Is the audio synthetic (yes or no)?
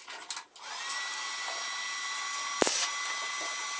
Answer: no